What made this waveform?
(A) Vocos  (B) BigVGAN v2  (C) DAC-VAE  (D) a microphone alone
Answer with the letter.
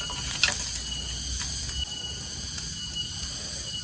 D